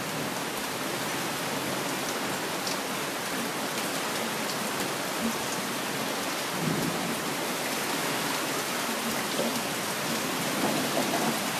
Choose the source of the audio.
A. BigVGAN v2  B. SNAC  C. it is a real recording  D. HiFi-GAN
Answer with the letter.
C